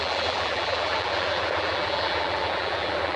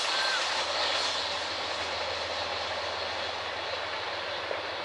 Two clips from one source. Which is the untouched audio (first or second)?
second